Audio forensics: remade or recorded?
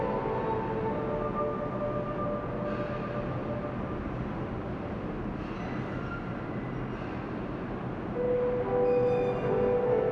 recorded